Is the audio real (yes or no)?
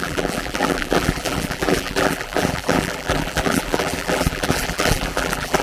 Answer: no